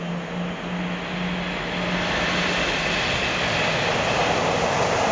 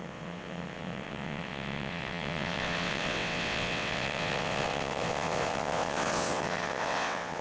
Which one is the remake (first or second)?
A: second